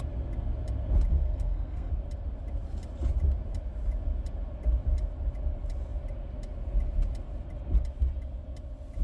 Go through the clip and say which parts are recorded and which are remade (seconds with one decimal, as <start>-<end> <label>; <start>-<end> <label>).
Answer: 0.0-1.1 recorded; 1.1-1.9 remade; 1.9-9.0 recorded